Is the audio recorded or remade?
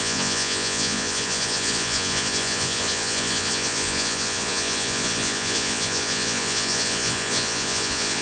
remade